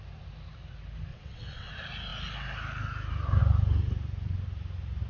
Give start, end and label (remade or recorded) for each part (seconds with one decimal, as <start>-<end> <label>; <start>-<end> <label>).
0.0-1.1 recorded; 1.1-1.7 remade; 1.7-5.1 recorded